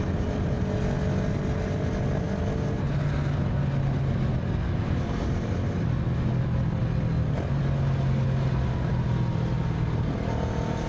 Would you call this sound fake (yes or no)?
no